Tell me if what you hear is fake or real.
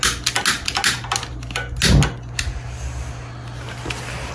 real